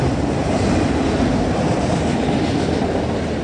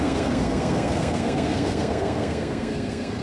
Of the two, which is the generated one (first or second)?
second